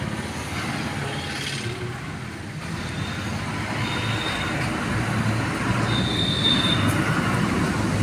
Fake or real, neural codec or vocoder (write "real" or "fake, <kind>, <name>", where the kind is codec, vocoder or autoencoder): real